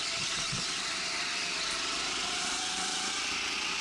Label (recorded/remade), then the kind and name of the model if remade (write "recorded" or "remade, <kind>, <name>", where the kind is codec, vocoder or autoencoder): remade, vocoder, BigVGAN v2